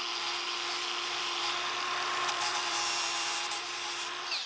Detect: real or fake fake